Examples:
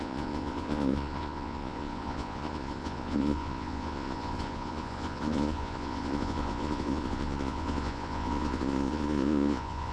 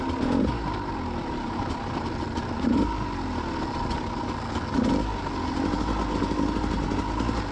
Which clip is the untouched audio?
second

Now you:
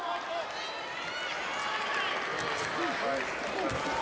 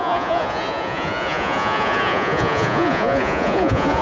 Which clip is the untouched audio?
first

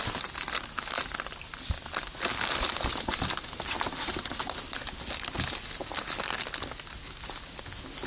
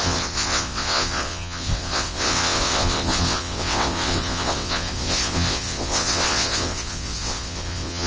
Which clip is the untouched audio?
first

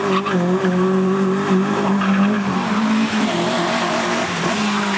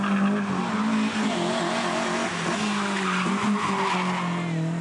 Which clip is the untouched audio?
second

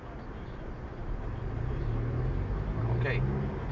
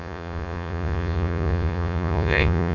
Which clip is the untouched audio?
first